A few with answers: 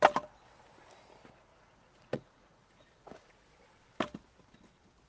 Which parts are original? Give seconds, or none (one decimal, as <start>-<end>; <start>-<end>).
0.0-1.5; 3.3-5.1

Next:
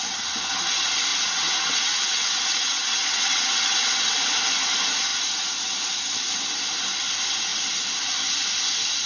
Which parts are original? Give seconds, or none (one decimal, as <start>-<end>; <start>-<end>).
0.0-1.1; 4.1-9.1

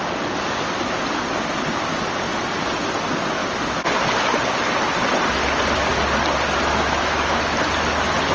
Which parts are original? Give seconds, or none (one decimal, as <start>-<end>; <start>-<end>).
0.0-6.7; 7.4-8.3

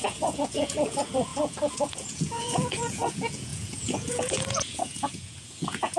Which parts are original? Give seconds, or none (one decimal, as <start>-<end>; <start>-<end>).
none

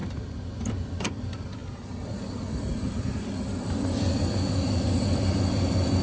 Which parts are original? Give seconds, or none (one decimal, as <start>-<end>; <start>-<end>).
0.0-6.0

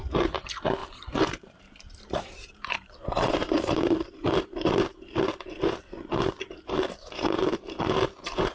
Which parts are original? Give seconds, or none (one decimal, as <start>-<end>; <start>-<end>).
0.0-0.8; 5.2-8.5